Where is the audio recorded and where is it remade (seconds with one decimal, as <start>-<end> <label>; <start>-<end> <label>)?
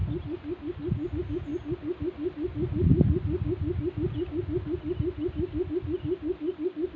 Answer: 0.0-7.0 recorded